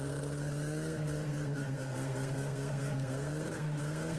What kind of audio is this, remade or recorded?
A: remade